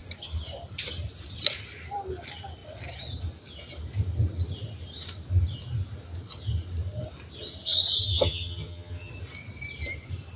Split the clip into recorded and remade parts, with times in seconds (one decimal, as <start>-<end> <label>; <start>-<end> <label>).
0.0-8.0 recorded; 8.0-9.1 remade; 9.1-10.4 recorded